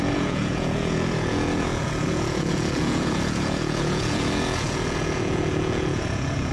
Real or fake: fake